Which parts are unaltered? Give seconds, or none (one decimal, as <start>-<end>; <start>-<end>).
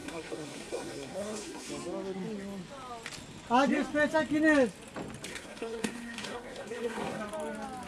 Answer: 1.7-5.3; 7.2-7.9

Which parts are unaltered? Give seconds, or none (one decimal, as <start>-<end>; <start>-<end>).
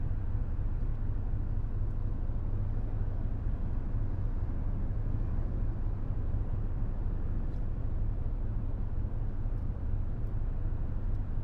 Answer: 0.9-3.4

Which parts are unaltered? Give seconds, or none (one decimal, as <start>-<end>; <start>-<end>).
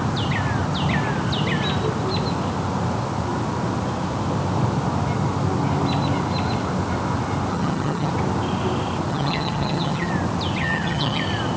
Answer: 0.0-7.5; 8.1-9.1; 10.1-10.6; 11.2-11.6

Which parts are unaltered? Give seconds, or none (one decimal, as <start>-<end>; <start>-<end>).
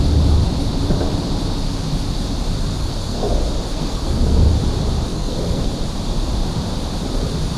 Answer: 0.0-2.8; 3.3-3.7; 4.5-5.1; 5.7-7.6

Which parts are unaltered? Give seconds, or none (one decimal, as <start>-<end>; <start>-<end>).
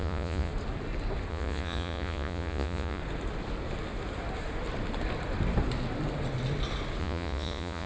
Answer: 0.5-1.3; 3.0-7.0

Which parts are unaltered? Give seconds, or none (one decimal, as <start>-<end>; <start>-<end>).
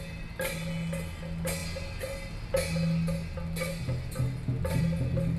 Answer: 0.0-5.4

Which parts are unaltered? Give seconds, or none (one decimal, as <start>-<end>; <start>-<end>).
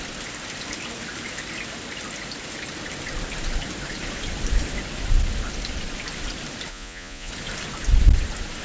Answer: 0.0-6.7; 7.3-8.6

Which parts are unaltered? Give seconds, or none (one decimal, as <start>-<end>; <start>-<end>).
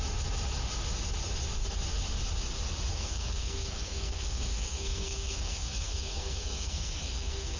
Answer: 0.0-2.9